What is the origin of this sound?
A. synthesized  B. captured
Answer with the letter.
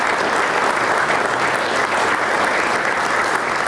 B